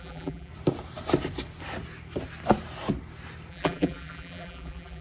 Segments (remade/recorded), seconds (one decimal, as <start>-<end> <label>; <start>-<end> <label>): 0.0-0.5 remade; 0.5-3.5 recorded; 3.5-5.0 remade